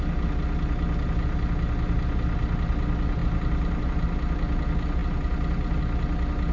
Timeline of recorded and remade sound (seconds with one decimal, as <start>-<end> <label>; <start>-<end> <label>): 0.0-6.5 recorded